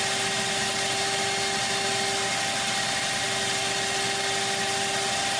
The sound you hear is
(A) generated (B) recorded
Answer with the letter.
B